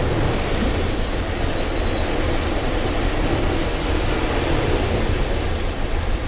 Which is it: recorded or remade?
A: recorded